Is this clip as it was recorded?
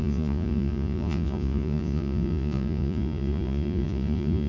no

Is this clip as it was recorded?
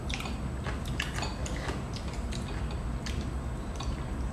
yes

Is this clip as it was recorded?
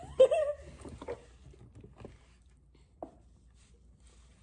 yes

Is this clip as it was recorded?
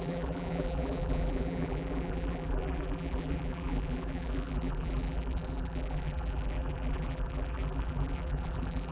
no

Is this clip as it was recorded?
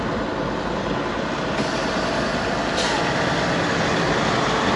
yes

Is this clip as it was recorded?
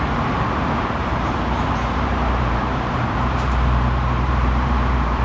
no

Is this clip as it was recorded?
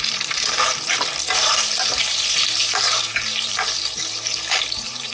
no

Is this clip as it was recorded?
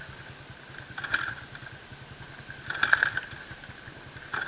yes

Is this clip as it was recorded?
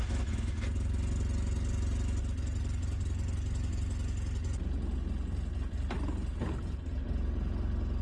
yes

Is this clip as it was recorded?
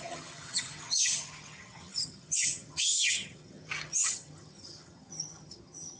no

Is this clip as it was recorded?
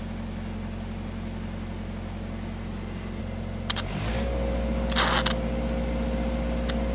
yes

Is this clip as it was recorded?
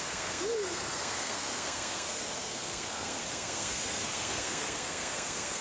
no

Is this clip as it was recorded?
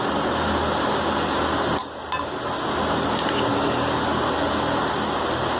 yes